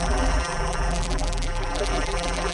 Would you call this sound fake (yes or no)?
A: yes